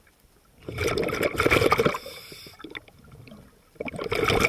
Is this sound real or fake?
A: real